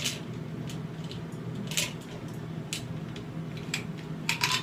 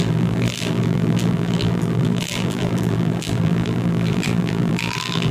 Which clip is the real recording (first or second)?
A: first